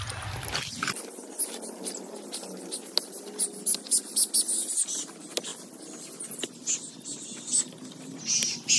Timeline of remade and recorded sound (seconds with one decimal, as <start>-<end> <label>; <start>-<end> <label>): 0.0-8.8 recorded